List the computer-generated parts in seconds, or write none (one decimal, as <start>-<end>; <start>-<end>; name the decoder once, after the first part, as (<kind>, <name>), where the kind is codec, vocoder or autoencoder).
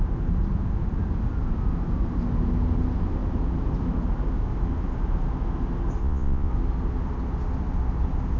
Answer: 6.0-6.5 (vocoder, Vocos)